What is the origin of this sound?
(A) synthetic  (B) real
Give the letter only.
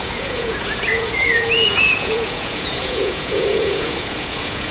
A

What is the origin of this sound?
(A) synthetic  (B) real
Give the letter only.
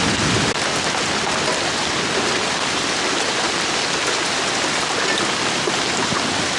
B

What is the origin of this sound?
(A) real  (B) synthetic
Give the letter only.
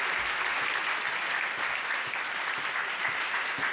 A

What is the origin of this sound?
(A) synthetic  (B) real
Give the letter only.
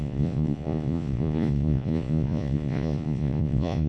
A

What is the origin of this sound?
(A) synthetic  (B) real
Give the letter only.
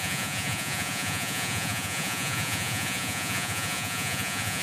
A